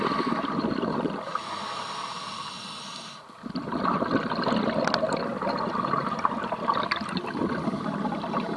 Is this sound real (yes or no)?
yes